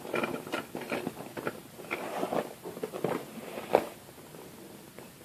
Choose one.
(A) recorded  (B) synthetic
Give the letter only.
A